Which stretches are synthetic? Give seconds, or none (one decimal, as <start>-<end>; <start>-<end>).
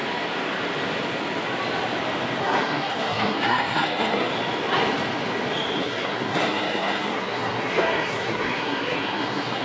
2.4-4.3; 5.8-9.6